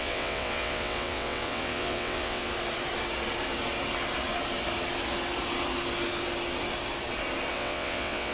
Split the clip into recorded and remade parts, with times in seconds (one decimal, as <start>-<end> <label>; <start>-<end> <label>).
0.0-2.5 remade; 2.5-7.5 recorded; 7.5-8.3 remade